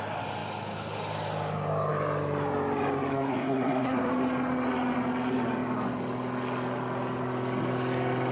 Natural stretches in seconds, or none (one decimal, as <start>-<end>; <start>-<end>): 0.0-3.1; 4.1-8.3